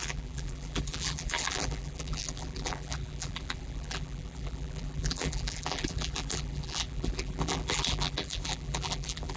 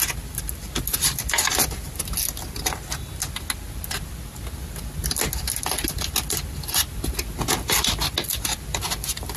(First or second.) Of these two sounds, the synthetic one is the first